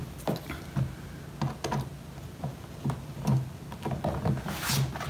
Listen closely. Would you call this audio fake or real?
real